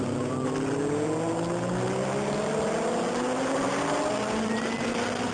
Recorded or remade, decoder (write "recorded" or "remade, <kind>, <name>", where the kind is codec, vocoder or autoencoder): recorded